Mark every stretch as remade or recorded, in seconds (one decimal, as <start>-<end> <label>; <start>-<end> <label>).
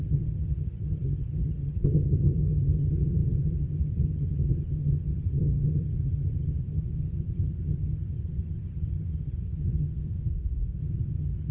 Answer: 0.0-10.3 remade; 10.3-10.8 recorded; 10.8-11.5 remade